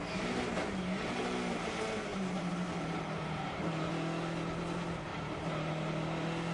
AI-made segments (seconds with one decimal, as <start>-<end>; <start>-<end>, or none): 2.1-3.9; 5.1-5.7